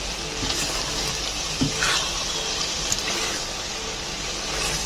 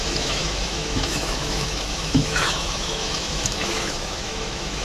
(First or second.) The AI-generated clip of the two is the second